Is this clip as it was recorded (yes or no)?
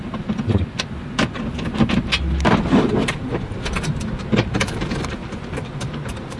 yes